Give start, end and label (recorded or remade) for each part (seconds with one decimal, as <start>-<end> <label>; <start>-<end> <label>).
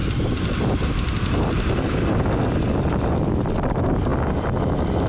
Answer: 0.0-5.1 recorded